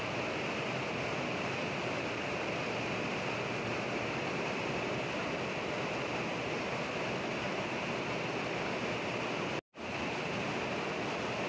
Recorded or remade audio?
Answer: recorded